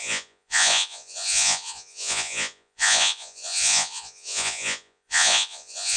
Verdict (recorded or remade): remade